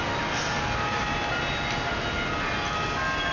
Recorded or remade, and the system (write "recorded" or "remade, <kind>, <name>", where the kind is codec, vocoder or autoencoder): recorded